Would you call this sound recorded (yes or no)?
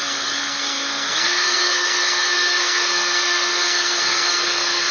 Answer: no